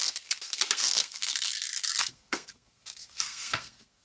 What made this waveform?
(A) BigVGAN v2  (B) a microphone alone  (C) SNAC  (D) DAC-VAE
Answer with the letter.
C